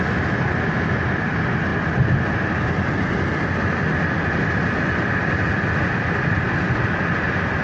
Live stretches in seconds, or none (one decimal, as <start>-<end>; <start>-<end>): 0.0-7.6